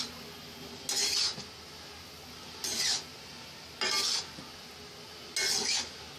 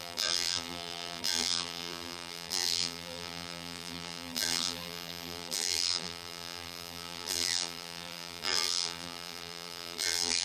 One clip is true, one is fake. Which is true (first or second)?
first